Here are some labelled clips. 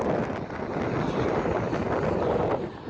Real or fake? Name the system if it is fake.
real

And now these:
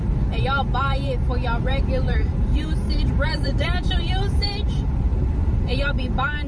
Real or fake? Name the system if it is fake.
fake, vocoder, BigVGAN v2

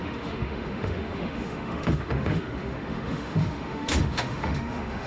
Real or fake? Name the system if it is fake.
fake, autoencoder, DAC-VAE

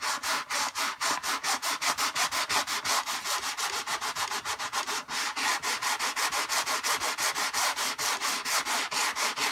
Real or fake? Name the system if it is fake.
real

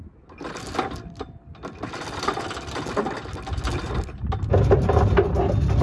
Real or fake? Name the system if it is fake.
real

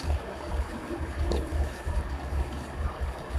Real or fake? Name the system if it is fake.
fake, codec, DAC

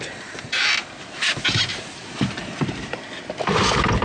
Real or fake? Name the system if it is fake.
real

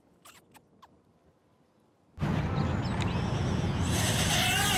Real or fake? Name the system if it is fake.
real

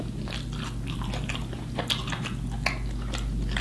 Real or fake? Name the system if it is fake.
real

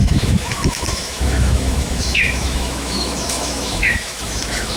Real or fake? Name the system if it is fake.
fake, autoencoder, DAC-VAE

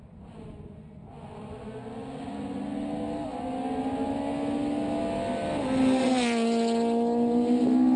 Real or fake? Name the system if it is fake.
real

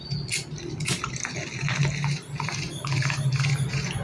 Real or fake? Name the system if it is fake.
real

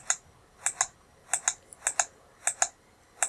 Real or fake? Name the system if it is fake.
real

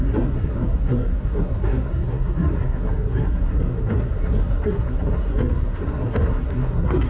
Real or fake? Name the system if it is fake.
fake, codec, SNAC